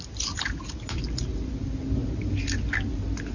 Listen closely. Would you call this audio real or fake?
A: real